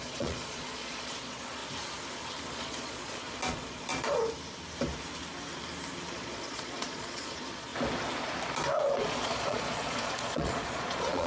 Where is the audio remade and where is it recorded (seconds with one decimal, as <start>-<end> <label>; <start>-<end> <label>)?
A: 0.0-1.6 remade; 1.6-2.5 recorded; 2.5-3.9 remade; 3.9-6.1 recorded; 6.1-7.7 remade; 7.7-9.0 recorded; 9.0-11.3 remade